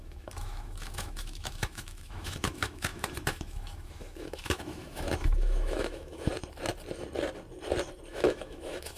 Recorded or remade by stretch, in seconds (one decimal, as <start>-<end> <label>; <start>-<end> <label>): 0.0-6.3 remade; 6.3-8.1 recorded; 8.1-9.0 remade